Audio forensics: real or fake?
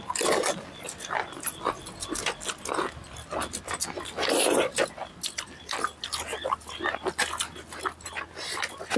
real